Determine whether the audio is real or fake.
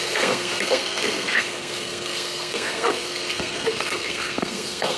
fake